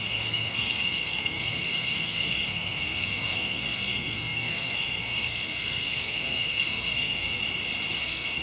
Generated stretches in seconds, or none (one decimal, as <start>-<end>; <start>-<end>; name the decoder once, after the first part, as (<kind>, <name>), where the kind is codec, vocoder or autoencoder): 0.0-7.4 (codec, SNAC); 8.0-8.4